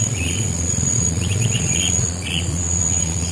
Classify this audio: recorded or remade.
remade